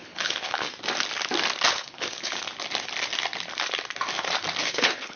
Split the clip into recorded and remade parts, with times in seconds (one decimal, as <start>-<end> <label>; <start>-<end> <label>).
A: 0.0-0.7 remade; 0.7-1.7 recorded; 1.7-2.4 remade; 2.4-4.6 recorded; 4.6-5.2 remade

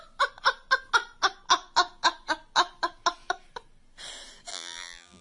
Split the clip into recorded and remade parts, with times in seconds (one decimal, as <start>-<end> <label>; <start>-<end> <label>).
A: 0.0-4.5 recorded; 4.5-5.2 remade

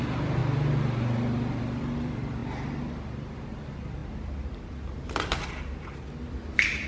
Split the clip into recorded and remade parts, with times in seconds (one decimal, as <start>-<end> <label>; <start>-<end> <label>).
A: 0.0-0.4 remade; 0.4-1.6 recorded; 1.6-2.4 remade; 2.4-3.6 recorded; 3.6-6.9 remade

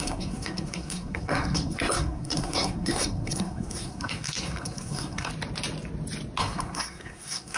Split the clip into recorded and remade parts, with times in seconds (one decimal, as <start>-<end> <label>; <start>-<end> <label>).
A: 0.0-5.3 remade; 5.3-6.4 recorded; 6.4-7.6 remade

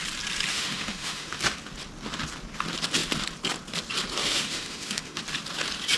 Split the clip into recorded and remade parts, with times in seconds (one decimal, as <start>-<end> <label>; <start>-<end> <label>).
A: 0.0-0.5 recorded; 0.5-1.4 remade; 1.4-4.2 recorded; 4.2-5.2 remade; 5.2-6.0 recorded

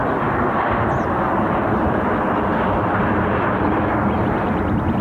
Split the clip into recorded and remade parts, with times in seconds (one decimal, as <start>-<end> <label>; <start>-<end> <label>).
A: 0.0-5.0 remade

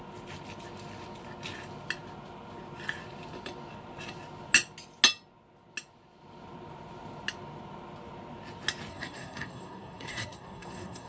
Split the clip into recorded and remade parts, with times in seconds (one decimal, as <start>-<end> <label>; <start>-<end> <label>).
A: 0.0-8.9 recorded; 8.9-11.1 remade